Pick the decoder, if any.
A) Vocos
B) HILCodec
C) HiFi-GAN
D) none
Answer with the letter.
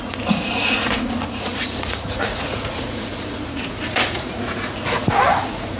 A